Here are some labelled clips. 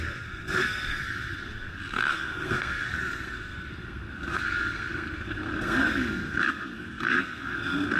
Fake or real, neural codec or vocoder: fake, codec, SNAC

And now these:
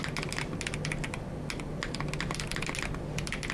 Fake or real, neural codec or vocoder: real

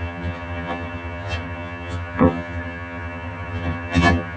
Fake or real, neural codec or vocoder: fake, vocoder, HiFi-GAN